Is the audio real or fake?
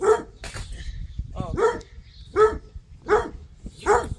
real